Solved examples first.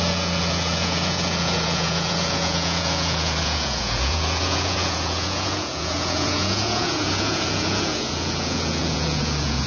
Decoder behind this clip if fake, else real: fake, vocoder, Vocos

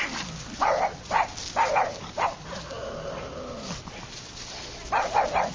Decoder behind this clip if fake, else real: real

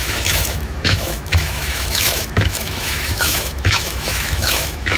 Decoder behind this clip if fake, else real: fake, autoencoder, DAC-VAE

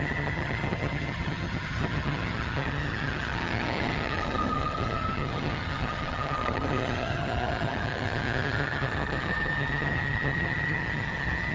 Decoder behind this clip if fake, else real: fake, vocoder, HiFi-GAN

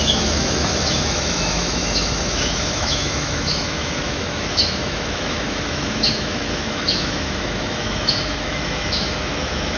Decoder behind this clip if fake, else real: fake, autoencoder, DAC-VAE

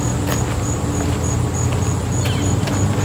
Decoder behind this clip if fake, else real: real